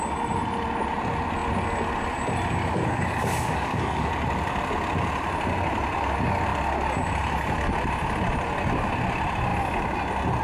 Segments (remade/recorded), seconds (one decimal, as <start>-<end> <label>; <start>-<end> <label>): 0.0-2.7 recorded; 2.7-4.1 remade; 4.1-10.4 recorded